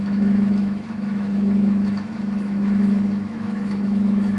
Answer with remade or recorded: remade